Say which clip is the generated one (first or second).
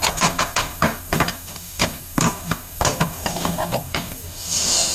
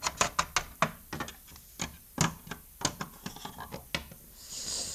first